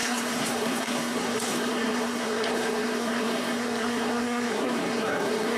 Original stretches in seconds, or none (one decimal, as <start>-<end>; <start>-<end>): none